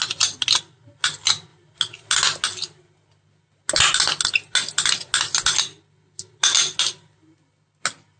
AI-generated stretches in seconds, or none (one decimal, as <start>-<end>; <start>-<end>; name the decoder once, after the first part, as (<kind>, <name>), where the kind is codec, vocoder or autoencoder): none